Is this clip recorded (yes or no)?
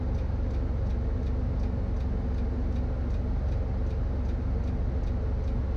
yes